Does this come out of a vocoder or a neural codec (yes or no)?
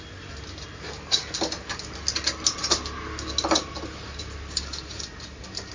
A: no